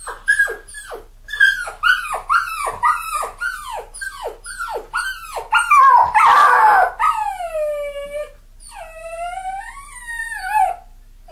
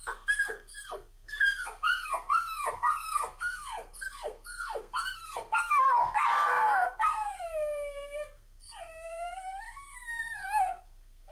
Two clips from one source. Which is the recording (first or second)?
first